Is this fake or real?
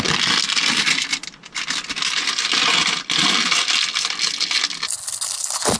real